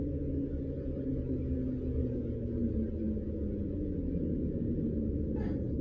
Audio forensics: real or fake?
real